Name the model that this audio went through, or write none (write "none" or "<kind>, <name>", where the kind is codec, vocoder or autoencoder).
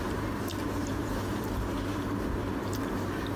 vocoder, BigVGAN v2